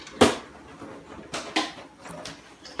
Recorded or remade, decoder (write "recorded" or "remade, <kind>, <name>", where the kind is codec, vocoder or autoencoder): recorded